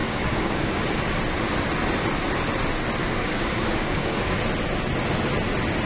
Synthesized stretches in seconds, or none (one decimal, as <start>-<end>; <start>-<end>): 0.0-0.8; 3.0-4.4